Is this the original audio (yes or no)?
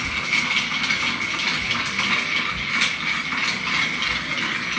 yes